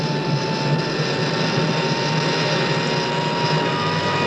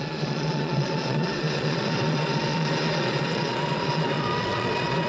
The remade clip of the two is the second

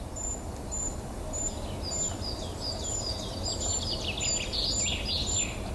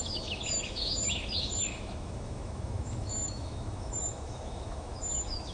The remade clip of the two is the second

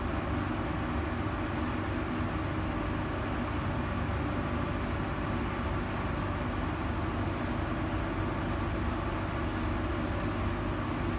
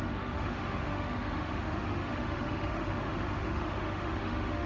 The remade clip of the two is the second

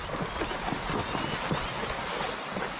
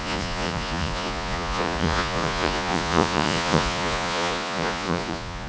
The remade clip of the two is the second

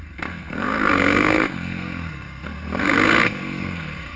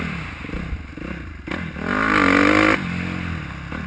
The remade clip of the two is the first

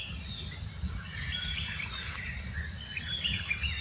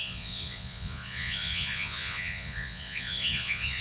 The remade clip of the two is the second